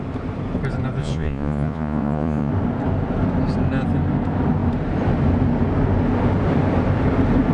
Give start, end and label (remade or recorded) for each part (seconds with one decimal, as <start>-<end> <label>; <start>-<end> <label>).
0.0-1.0 recorded; 1.0-2.5 remade; 2.5-7.5 recorded